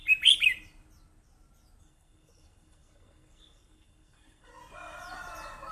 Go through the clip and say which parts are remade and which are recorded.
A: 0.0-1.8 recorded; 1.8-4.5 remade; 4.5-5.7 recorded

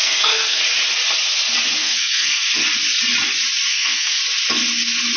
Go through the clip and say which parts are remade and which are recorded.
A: 0.0-0.6 remade; 0.6-1.8 recorded; 1.8-2.5 remade; 2.5-3.7 recorded; 3.7-4.2 remade; 4.2-5.2 recorded

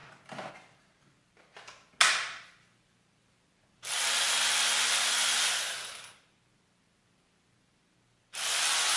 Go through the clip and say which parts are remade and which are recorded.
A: 0.0-9.0 recorded

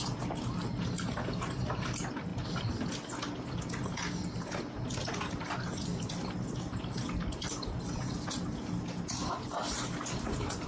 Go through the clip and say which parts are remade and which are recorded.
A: 0.0-10.7 recorded

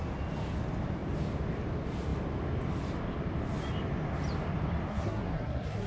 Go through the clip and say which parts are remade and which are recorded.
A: 0.0-4.9 recorded; 4.9-5.9 remade

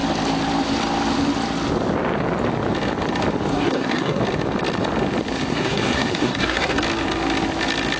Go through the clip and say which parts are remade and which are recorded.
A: 0.0-3.5 recorded; 3.5-4.2 remade; 4.2-5.5 recorded; 5.5-6.8 remade; 6.8-8.0 recorded